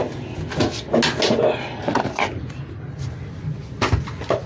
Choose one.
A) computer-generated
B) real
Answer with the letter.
B